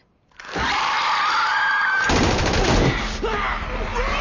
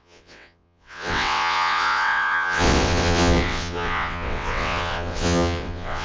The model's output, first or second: second